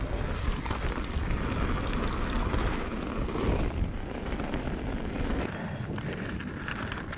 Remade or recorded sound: remade